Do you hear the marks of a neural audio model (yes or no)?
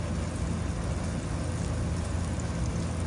no